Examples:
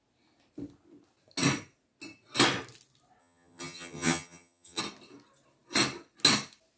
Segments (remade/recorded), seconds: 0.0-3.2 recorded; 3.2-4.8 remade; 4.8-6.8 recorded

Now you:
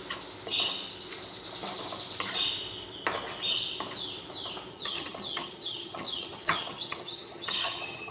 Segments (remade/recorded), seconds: 0.0-4.7 recorded; 4.7-8.1 remade

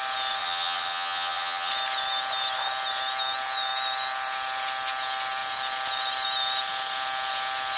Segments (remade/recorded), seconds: 0.0-0.4 recorded; 0.4-1.7 remade; 1.7-7.8 recorded

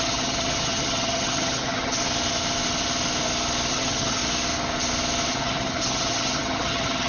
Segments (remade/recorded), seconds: 0.0-2.0 remade; 2.0-3.7 recorded; 3.7-4.2 remade; 4.2-5.3 recorded; 5.3-7.1 remade

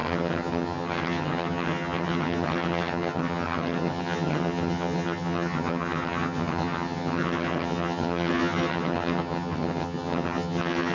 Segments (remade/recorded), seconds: 0.0-10.9 remade

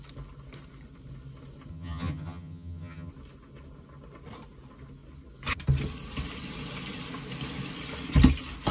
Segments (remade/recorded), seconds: 0.0-1.7 recorded; 1.7-3.1 remade; 3.1-8.7 recorded

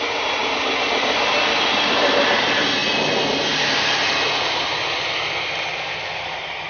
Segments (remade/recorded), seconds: 0.0-6.7 recorded

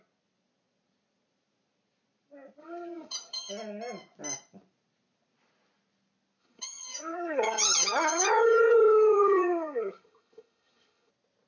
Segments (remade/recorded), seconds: 0.0-2.6 recorded; 2.6-3.5 remade; 3.5-6.4 recorded; 6.4-11.1 remade; 11.1-11.5 recorded